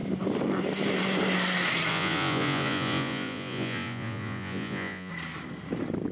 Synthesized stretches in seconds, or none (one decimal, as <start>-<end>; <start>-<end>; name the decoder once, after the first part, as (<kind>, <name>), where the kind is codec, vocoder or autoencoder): 1.9-5.1 (vocoder, Vocos)